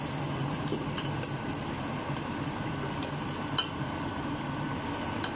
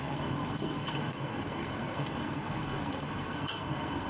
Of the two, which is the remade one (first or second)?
second